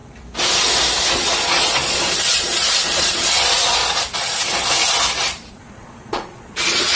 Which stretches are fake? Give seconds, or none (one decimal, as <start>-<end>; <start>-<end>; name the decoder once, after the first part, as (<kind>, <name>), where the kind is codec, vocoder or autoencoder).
1.0-3.8 (vocoder, Vocos); 5.5-7.0